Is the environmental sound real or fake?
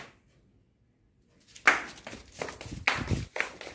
real